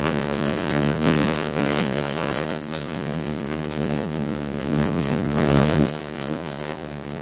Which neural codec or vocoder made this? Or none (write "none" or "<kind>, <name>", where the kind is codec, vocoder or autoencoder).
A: vocoder, Vocos